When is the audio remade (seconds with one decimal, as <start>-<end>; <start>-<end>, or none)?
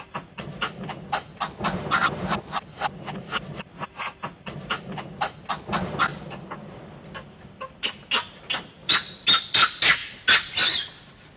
8.8-9.4